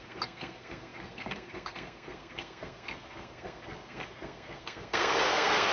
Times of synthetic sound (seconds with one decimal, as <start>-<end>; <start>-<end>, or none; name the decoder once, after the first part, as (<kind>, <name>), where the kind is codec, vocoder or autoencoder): 0.0-5.7 (codec, SNAC)